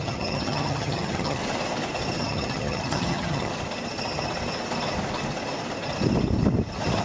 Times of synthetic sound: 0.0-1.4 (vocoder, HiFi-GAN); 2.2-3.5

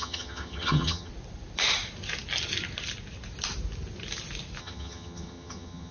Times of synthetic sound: 0.0-1.1 (vocoder, HiFi-GAN); 4.6-5.9

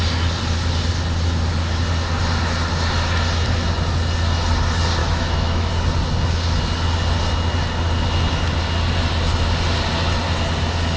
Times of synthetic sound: 5.0-5.7 (autoencoder, DAC-VAE)

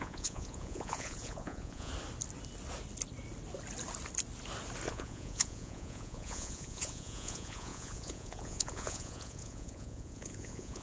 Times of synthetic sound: 0.0-1.9 (vocoder, Vocos); 4.9-10.8

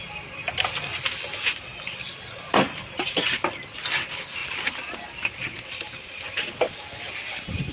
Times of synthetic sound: none

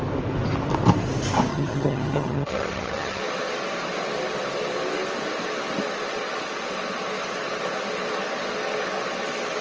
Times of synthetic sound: 1.5-3.2 (vocoder, HiFi-GAN)

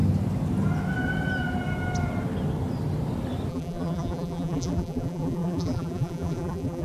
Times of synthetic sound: 3.5-6.8 (vocoder, BigVGAN v2)